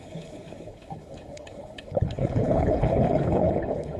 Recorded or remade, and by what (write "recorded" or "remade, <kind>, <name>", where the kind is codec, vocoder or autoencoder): remade, codec, HILCodec